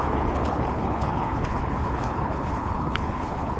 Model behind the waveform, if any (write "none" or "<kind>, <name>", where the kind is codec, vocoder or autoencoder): codec, HILCodec